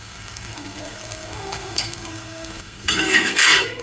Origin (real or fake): fake